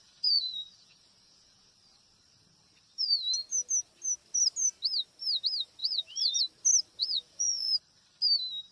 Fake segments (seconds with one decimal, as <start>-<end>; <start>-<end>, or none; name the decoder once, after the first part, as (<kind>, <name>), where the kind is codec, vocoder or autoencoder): 0.0-1.7 (vocoder, Vocos); 5.8-6.4; 7.0-7.7